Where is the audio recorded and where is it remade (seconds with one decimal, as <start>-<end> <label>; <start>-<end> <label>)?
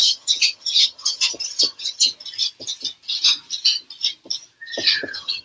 0.0-2.1 remade; 2.1-5.0 recorded; 5.0-5.4 remade